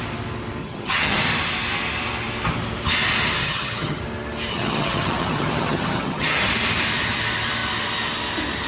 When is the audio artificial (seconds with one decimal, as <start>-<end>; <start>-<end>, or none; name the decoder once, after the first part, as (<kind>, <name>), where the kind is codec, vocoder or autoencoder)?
0.6-1.2 (vocoder, HiFi-GAN); 3.4-4.0; 4.5-6.5